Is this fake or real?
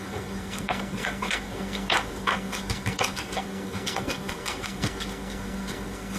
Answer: fake